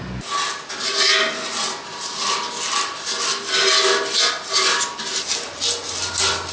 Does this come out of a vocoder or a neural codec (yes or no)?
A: no